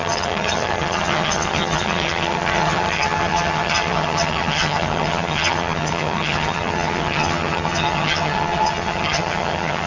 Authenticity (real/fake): fake